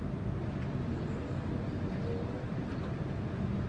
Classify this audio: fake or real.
real